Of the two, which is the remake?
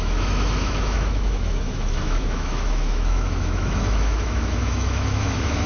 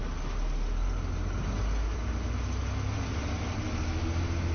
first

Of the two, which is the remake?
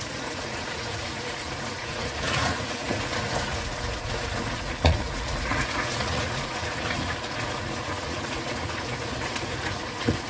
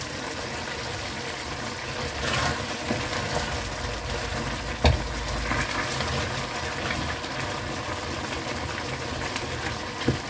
first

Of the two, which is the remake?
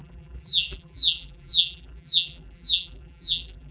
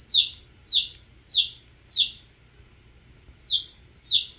first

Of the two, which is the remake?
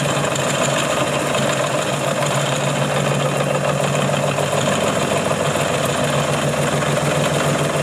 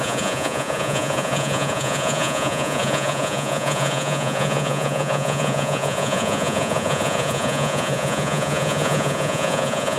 second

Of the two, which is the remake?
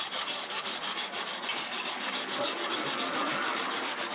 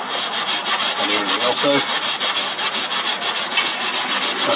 first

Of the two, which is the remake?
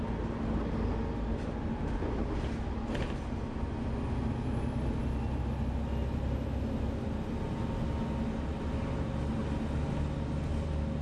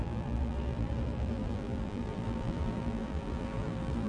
second